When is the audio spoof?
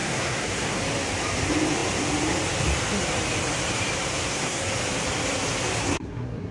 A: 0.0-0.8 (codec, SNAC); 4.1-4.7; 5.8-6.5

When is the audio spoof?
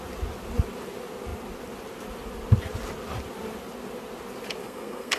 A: 4.6-5.2 (codec, SNAC)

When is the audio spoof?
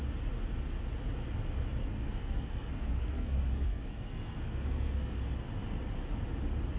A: 1.8-5.2 (codec, SNAC)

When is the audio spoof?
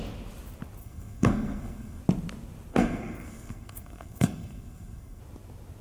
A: 0.8-2.0 (codec, SNAC); 2.7-5.2